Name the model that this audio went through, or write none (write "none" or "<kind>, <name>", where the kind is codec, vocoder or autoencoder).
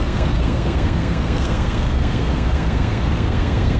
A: codec, SNAC